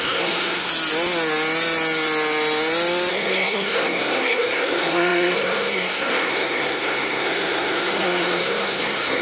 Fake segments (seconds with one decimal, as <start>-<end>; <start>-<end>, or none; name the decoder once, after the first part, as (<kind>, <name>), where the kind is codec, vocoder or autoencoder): 0.0-0.7 (codec, SNAC); 3.1-9.2